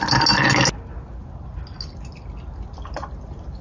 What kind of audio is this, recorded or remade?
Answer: recorded